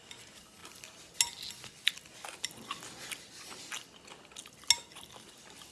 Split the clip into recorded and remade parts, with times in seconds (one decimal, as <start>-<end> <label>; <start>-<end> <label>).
0.0-5.7 recorded